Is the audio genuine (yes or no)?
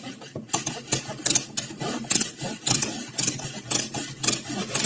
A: yes